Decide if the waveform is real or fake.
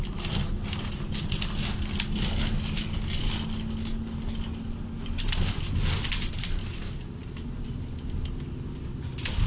real